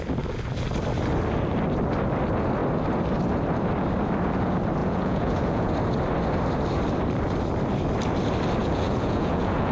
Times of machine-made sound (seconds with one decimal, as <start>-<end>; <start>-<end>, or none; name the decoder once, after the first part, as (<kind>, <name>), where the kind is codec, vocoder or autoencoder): 4.8-5.7 (vocoder, Vocos); 8.6-9.7